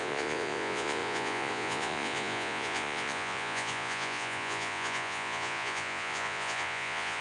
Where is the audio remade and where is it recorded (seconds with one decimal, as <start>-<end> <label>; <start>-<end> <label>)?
0.0-7.2 remade